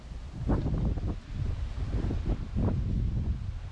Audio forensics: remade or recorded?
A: recorded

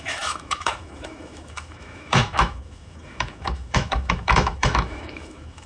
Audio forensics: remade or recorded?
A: remade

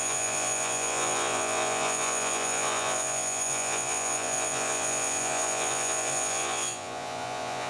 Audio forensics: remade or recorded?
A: remade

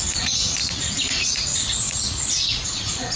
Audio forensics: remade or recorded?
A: remade